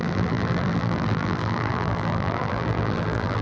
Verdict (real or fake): fake